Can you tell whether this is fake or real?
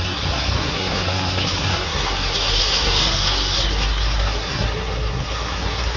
fake